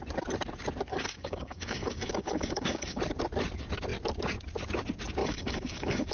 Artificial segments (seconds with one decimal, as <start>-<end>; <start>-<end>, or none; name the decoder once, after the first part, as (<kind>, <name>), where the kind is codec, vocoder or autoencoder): 0.9-3.0 (codec, DAC); 5.2-6.1